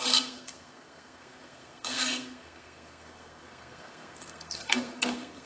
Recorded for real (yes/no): no